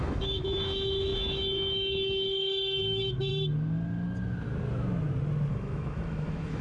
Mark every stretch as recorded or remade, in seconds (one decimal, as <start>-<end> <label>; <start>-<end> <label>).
0.0-3.3 remade; 3.3-5.5 recorded; 5.5-6.6 remade